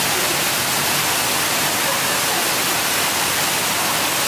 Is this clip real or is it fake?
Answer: real